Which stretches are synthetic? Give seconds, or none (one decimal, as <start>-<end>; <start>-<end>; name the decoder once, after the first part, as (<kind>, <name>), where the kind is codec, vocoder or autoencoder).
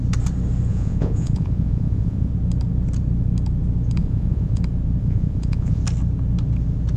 0.7-2.3 (vocoder, Vocos); 4.0-4.6; 5.0-5.8